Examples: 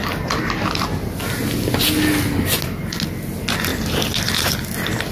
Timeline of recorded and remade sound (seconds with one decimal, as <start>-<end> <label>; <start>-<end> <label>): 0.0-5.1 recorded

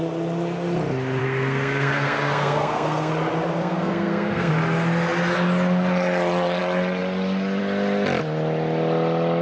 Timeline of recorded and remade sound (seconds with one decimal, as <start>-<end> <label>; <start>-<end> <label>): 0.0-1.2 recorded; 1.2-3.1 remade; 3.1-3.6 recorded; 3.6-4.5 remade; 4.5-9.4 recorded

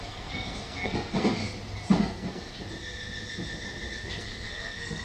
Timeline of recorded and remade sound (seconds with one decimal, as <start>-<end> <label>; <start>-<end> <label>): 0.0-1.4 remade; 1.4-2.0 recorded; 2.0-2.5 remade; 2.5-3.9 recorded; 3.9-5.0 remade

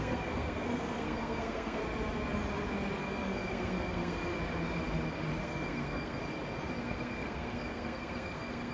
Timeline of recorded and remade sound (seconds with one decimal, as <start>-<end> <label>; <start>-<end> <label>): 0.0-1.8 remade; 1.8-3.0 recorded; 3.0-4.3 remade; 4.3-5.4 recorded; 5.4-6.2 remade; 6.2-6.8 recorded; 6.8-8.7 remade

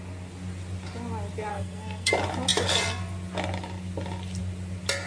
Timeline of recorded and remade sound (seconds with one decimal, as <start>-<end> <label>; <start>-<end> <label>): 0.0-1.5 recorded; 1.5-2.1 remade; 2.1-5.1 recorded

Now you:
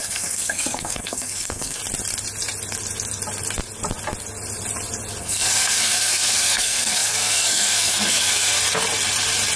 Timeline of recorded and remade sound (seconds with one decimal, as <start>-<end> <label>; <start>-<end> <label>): 0.0-1.8 remade; 1.8-5.2 recorded; 5.2-8.6 remade; 8.6-9.6 recorded

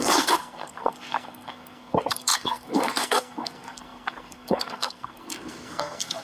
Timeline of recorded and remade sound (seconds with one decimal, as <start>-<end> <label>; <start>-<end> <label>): 0.0-6.2 remade